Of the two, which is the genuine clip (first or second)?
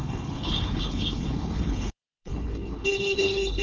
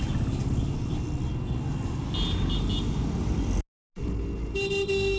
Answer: second